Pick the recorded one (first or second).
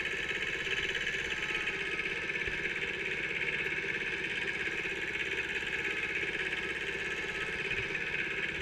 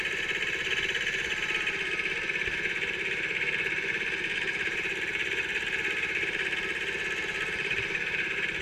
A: first